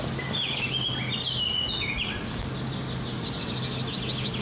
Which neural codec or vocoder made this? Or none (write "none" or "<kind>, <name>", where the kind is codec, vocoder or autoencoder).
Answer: none